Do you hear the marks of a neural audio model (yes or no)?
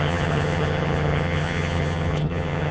yes